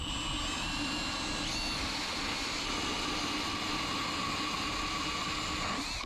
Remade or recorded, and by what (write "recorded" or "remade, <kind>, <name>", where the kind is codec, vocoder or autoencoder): recorded